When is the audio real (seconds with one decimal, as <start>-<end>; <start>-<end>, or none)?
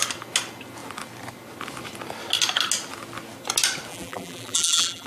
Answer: 0.0-3.9